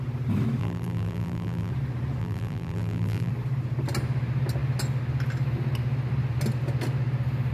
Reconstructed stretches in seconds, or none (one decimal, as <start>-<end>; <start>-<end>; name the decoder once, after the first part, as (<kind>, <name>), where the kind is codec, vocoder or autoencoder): 0.6-1.7 (vocoder, BigVGAN v2); 2.2-3.3